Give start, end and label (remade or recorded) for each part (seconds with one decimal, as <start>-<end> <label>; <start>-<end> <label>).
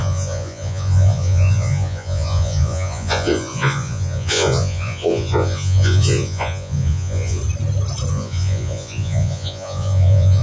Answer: 0.0-7.4 remade; 7.4-8.1 recorded; 8.1-10.4 remade